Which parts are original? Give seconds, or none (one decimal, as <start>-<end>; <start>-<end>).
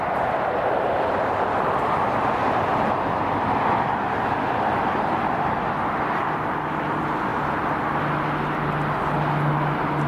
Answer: 0.0-10.1